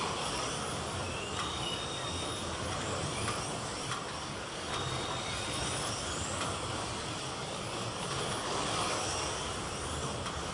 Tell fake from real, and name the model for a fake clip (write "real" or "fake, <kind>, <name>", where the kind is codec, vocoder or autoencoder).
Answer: real